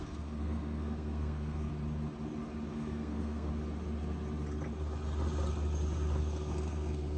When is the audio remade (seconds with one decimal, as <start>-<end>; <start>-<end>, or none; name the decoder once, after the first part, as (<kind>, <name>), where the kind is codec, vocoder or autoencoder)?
0.0-1.7 (codec, SNAC); 2.7-3.5; 6.2-7.2

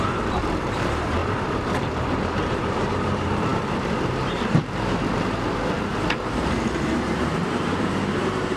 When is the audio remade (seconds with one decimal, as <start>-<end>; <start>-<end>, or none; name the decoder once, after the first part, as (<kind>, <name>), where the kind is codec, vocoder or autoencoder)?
0.0-8.6 (vocoder, BigVGAN v2)

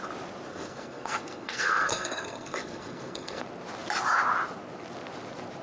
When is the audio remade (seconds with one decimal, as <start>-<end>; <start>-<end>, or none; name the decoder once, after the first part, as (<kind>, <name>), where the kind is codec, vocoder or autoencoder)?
0.5-3.4 (codec, SNAC)